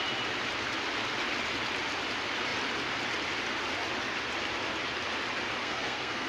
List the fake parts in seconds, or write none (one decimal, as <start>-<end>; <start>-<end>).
5.6-6.3